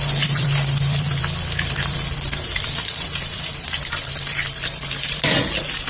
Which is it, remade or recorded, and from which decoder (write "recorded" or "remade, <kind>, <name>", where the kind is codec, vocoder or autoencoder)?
remade, vocoder, BigVGAN v2